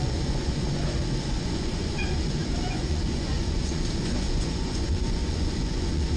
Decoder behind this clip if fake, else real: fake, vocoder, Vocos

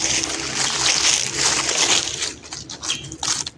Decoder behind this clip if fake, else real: real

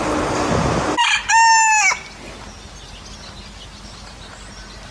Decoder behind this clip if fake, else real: real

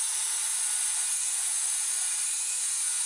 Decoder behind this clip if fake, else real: real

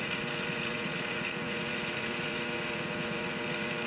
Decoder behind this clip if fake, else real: fake, vocoder, Vocos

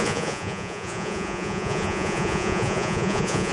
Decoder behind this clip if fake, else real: fake, vocoder, Vocos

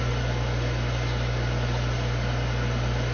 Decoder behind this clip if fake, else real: real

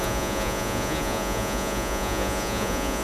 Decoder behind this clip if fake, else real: fake, vocoder, Vocos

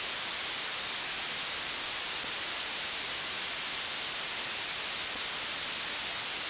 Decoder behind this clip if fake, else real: real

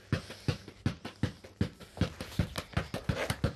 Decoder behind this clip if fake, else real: real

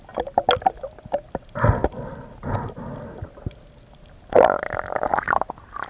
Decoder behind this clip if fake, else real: real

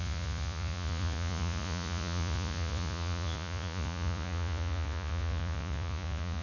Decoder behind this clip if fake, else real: fake, vocoder, Vocos